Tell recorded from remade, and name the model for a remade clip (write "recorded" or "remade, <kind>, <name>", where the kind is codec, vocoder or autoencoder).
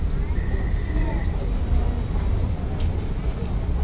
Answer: recorded